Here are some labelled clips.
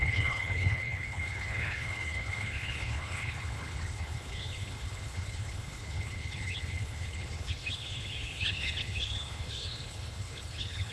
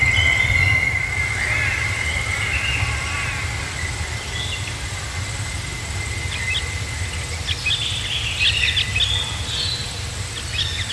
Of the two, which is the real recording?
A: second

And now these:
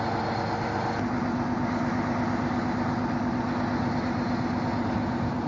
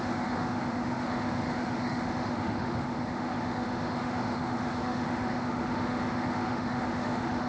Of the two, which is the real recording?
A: first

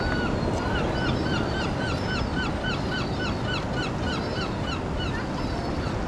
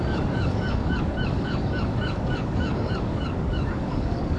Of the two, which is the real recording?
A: first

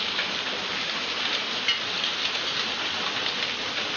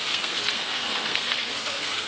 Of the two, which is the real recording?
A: first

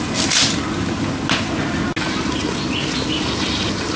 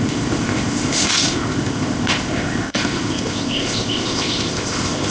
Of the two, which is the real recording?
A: first